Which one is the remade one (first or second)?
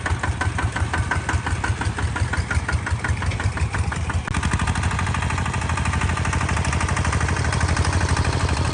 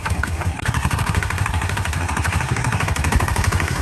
second